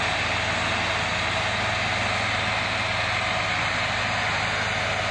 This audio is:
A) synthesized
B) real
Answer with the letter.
B